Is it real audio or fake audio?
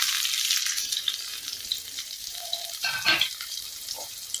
fake